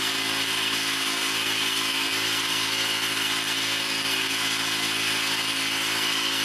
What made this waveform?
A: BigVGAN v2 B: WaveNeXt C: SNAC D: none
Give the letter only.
C